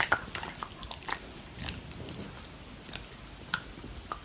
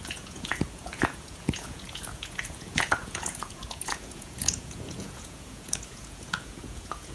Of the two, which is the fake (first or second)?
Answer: second